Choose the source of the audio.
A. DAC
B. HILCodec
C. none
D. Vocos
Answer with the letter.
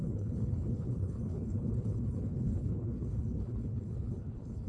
B